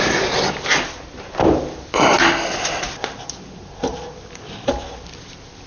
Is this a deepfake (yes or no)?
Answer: no